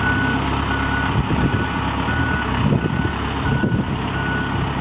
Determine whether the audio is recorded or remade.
recorded